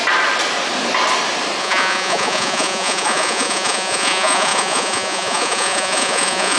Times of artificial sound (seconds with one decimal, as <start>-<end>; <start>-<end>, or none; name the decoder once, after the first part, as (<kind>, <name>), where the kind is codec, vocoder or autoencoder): 1.6-6.6 (vocoder, Vocos)